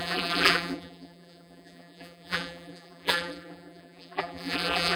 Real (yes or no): no